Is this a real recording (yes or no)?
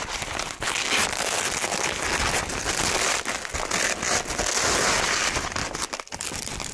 yes